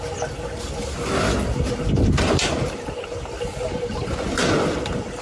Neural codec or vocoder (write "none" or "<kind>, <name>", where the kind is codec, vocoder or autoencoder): none